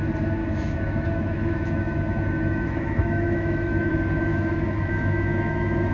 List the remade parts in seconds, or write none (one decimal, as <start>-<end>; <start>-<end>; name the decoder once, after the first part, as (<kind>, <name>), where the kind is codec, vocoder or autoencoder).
0.4-3.9 (autoencoder, DAC-VAE); 4.3-5.9